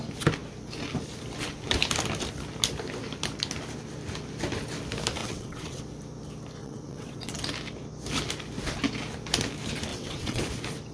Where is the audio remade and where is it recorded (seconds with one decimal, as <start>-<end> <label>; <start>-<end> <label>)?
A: 0.0-5.2 recorded; 5.2-5.8 remade; 5.8-6.6 recorded; 6.6-7.3 remade; 7.3-9.9 recorded; 9.9-10.4 remade; 10.4-10.9 recorded